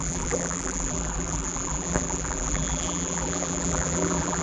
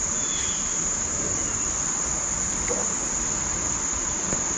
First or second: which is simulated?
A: first